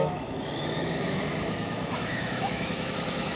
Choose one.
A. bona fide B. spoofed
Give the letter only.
B